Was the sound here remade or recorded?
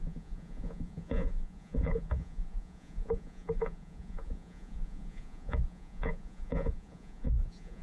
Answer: remade